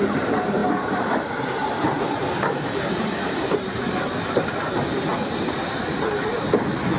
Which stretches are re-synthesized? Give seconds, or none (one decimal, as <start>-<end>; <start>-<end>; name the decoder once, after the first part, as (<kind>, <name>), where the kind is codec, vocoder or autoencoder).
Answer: 0.0-5.1 (vocoder, BigVGAN v2)